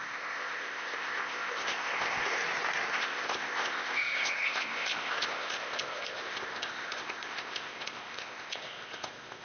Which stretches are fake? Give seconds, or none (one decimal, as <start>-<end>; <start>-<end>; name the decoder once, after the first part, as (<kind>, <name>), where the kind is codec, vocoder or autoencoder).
0.0-2.4 (codec, ZipCodec); 2.9-9.4